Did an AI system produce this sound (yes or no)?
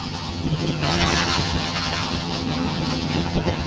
yes